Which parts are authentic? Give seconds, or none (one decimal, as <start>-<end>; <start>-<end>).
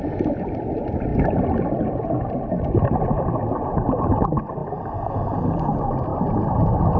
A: 0.0-7.0